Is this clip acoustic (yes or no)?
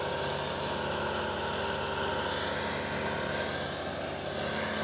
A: yes